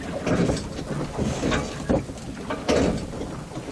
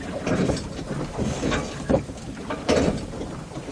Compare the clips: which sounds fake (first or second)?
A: second